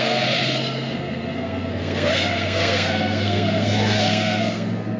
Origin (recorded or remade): remade